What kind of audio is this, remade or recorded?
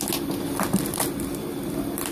recorded